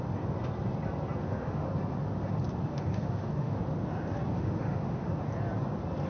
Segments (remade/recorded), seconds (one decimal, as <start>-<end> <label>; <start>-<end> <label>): 0.0-1.2 recorded; 1.2-1.7 remade; 1.7-2.7 recorded; 2.7-3.6 remade; 3.6-4.3 recorded; 4.3-5.1 remade; 5.1-6.1 recorded